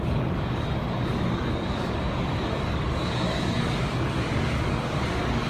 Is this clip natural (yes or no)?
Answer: no